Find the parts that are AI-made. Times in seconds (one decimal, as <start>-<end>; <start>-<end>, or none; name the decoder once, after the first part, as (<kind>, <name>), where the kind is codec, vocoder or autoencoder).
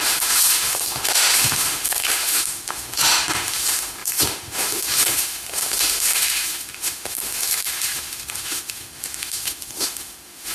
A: 0.0-10.5 (autoencoder, DAC-VAE)